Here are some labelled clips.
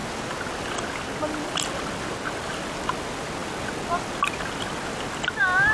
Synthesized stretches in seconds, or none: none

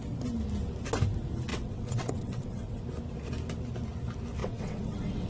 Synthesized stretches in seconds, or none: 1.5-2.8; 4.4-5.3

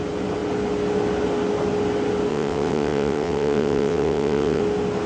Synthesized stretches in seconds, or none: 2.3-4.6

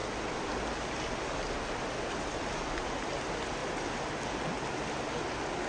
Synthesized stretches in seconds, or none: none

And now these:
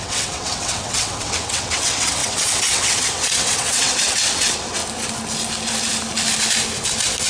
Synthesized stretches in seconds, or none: 0.0-4.8

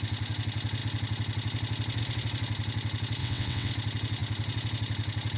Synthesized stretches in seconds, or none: 3.2-3.7